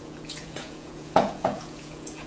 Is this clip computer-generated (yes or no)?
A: yes